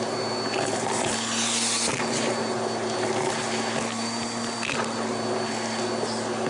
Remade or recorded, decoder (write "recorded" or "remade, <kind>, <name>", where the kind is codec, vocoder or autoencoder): recorded